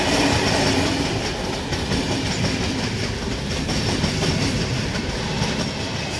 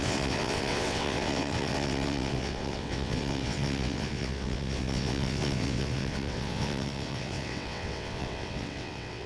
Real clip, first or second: first